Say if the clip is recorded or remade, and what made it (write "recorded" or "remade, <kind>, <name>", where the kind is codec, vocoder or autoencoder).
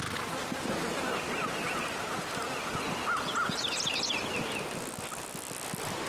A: recorded